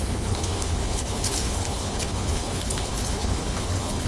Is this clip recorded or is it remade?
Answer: remade